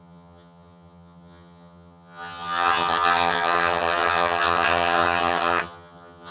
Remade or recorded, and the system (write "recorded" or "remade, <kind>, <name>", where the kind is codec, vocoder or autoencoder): remade, vocoder, HiFi-GAN